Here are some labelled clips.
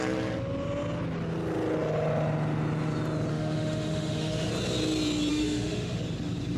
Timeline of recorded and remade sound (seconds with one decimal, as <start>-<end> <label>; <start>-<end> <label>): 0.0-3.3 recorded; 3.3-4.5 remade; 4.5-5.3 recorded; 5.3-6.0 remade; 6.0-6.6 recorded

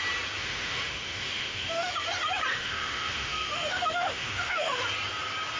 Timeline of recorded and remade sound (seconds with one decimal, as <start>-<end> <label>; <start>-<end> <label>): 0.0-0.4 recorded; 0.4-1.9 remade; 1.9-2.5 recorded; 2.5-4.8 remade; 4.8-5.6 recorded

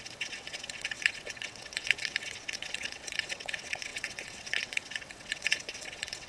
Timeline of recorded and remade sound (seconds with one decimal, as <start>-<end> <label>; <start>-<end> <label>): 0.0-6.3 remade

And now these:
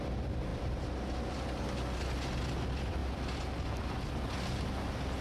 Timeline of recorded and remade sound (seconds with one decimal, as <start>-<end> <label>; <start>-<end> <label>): 0.0-0.5 recorded; 0.5-1.6 remade; 1.6-3.0 recorded; 3.0-4.1 remade; 4.1-5.2 recorded